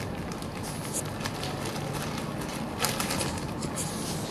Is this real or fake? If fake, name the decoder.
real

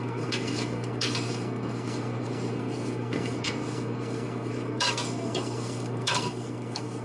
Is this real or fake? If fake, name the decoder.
fake, codec, SNAC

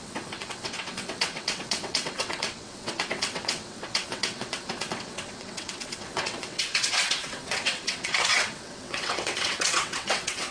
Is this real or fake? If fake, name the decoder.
fake, vocoder, WaveNeXt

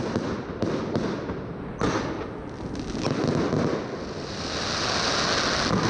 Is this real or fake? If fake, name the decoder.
real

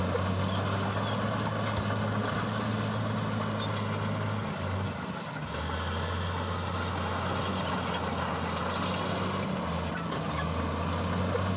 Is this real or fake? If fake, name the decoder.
real